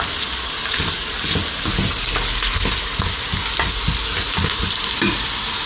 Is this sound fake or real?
real